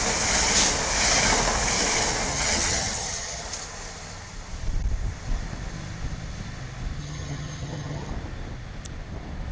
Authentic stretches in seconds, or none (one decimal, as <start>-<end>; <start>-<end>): 0.0-2.3; 3.4-7.0; 8.1-9.5